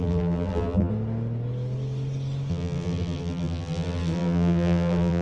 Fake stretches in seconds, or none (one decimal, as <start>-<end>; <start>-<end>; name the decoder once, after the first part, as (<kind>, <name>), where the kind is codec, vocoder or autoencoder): 0.0-0.9 (vocoder, BigVGAN v2); 2.5-5.2